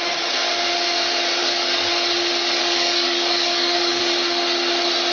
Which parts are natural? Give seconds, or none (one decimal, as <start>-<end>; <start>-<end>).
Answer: 0.0-1.4; 1.9-2.6; 4.0-5.1